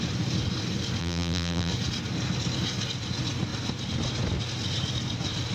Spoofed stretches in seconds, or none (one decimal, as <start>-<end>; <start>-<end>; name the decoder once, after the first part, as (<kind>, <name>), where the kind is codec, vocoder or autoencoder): 1.0-1.7 (vocoder, BigVGAN v2)